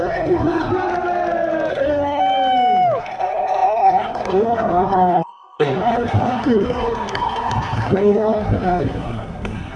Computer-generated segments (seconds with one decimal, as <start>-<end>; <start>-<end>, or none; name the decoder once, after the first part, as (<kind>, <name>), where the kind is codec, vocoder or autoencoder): 0.0-0.7 (codec, SNAC); 1.7-2.2; 3.0-9.8